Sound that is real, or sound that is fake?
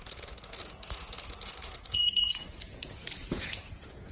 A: fake